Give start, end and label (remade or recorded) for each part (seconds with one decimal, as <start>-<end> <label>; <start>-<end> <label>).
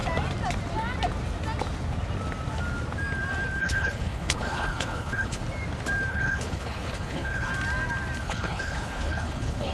0.0-3.6 recorded; 3.6-5.4 remade; 5.4-6.1 recorded; 6.1-7.5 remade; 7.5-8.2 recorded; 8.2-9.7 remade